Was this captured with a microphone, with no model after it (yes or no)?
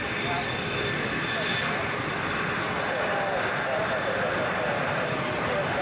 yes